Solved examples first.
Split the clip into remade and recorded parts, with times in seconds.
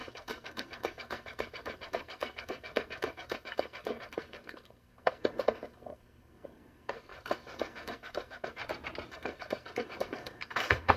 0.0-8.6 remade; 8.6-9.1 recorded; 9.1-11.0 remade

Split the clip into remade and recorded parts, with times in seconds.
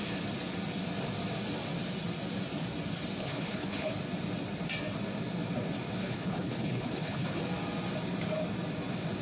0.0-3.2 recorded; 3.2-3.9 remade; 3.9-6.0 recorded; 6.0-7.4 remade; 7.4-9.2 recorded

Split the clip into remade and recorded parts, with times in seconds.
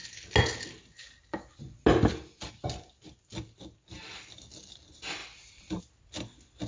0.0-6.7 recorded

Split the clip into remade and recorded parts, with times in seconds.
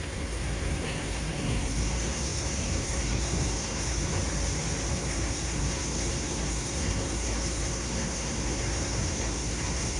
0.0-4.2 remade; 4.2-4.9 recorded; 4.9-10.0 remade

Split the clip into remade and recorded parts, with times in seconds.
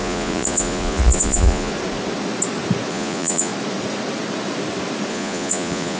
0.0-1.7 remade; 1.7-2.9 recorded; 2.9-3.5 remade; 3.5-5.1 recorded; 5.1-6.0 remade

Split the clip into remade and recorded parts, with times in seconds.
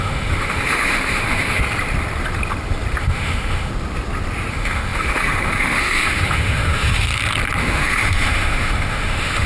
0.0-1.6 remade; 1.6-3.0 recorded; 3.0-3.7 remade; 3.7-4.5 recorded; 4.5-7.1 remade; 7.1-7.6 recorded; 7.6-9.5 remade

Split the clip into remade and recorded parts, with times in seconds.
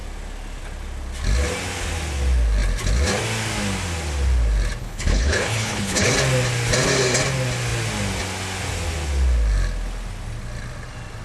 0.0-4.8 recorded; 4.8-6.1 remade; 6.1-11.2 recorded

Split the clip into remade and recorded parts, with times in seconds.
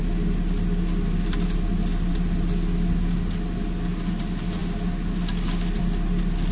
0.0-6.5 recorded